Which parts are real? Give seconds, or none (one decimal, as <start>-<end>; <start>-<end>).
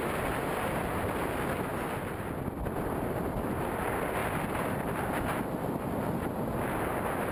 0.0-7.3